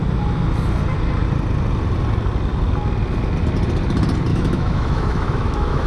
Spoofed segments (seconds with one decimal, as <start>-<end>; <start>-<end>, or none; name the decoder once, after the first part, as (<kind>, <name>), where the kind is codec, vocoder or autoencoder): 4.3-5.9 (autoencoder, DAC-VAE)

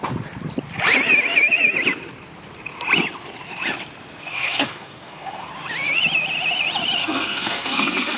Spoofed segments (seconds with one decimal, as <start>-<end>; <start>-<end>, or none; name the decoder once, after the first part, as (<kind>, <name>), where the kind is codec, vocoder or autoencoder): 4.2-5.5 (codec, SNAC); 7.0-8.2

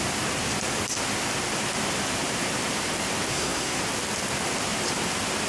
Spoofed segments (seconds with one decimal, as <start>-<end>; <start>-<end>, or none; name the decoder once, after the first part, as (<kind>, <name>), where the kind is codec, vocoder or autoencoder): 3.3-3.8 (codec, SNAC)

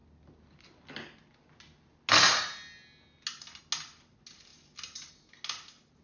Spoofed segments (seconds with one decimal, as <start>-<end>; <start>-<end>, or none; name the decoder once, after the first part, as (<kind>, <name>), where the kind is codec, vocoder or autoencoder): none